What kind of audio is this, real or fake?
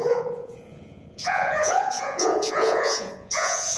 fake